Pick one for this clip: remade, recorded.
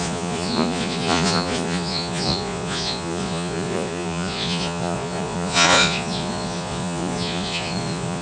remade